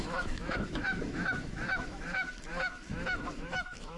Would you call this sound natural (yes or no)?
no